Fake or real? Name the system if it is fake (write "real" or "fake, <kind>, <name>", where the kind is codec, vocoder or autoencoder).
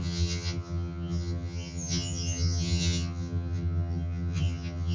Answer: fake, vocoder, HiFi-GAN